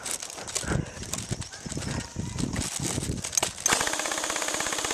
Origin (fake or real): real